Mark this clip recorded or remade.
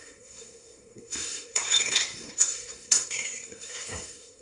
remade